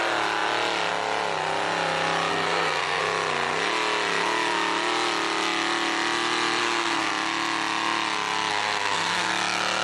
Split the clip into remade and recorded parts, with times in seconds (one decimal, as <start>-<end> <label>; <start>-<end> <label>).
0.0-2.3 recorded; 2.3-3.0 remade; 3.0-6.6 recorded; 6.6-7.1 remade; 7.1-8.5 recorded; 8.5-9.3 remade; 9.3-9.8 recorded